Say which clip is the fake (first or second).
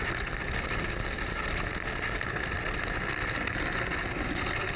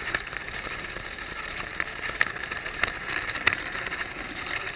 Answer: second